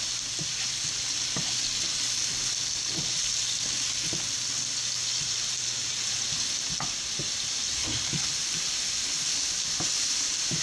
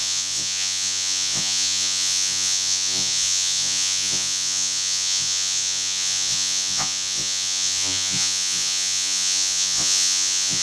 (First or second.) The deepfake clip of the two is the second